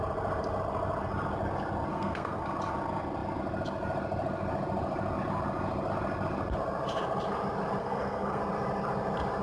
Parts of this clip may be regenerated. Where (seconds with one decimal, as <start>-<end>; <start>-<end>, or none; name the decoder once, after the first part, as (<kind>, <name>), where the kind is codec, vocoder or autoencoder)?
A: 1.9-2.4 (codec, SNAC); 7.8-8.4